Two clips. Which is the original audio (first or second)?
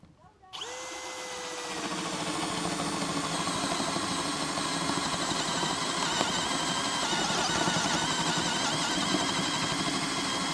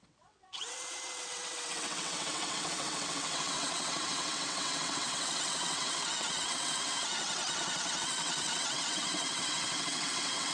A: first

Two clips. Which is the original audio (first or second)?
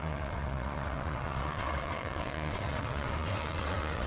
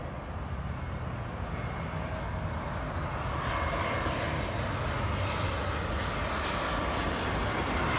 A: second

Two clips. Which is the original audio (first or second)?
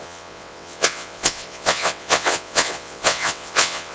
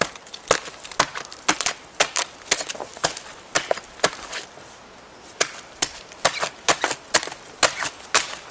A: second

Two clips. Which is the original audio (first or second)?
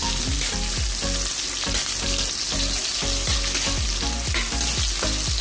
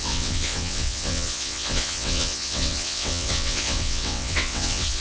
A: first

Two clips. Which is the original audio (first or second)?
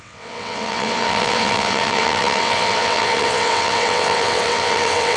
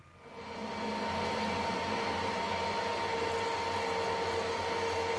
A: second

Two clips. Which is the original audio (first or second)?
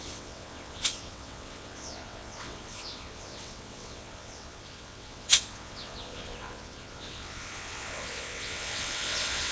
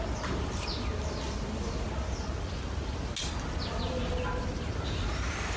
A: second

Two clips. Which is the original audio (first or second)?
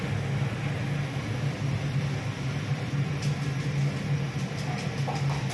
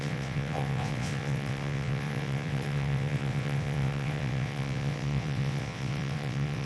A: first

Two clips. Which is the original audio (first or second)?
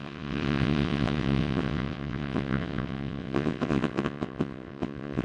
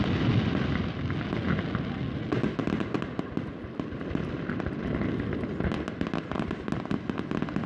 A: second